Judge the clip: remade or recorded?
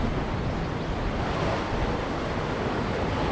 recorded